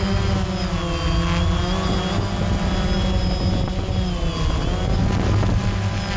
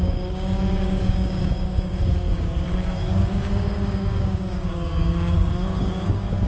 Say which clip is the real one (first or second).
first